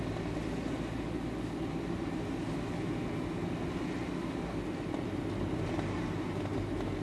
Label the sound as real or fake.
real